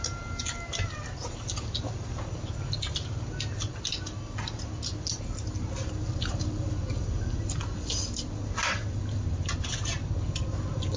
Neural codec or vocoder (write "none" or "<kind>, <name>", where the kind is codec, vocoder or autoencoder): none